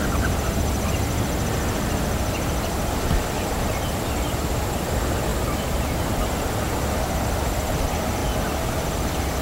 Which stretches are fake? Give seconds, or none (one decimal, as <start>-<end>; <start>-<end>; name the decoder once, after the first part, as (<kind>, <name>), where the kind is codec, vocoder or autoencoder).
none